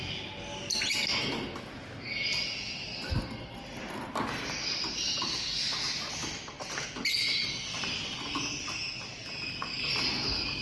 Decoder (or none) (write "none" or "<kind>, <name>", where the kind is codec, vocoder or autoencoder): none